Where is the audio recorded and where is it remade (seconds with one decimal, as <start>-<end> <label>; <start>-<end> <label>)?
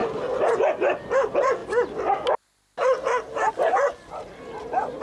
0.0-0.7 recorded; 0.7-1.6 remade; 1.6-3.5 recorded; 3.5-5.0 remade